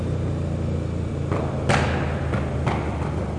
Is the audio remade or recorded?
recorded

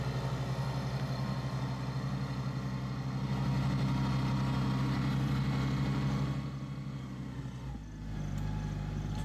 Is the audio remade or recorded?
recorded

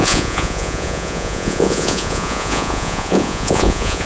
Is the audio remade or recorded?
remade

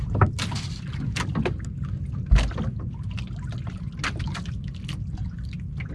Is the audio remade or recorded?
recorded